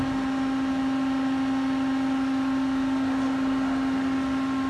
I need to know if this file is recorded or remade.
recorded